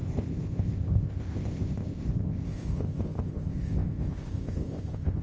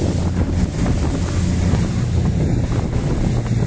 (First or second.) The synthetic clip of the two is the first